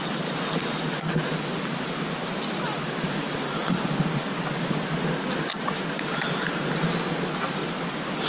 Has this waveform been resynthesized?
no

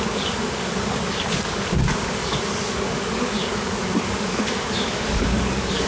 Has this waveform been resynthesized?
yes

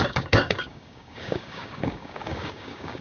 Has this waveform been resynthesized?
yes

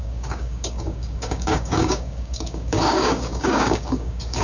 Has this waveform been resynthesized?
yes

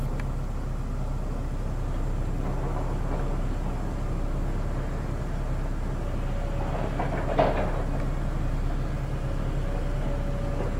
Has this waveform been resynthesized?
no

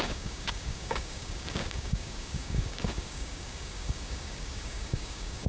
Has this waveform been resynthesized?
yes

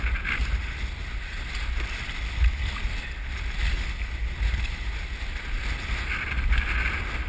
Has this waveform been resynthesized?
no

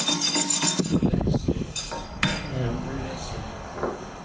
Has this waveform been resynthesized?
yes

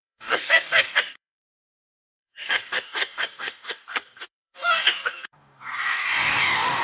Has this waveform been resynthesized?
yes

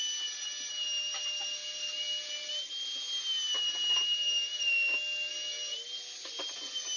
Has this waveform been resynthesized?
no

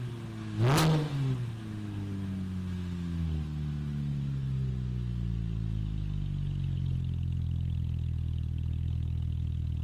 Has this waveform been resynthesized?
no